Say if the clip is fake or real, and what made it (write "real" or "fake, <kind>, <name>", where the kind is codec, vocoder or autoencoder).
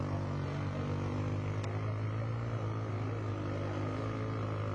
real